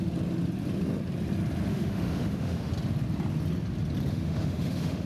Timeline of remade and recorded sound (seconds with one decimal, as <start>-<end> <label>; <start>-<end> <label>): 0.0-1.7 recorded; 1.7-2.7 remade; 2.7-4.1 recorded; 4.1-5.1 remade